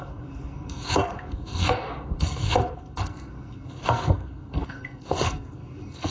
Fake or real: fake